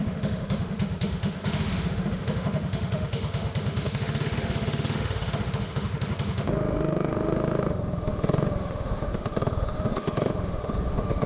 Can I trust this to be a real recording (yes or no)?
no